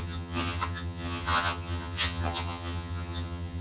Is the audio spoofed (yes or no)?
yes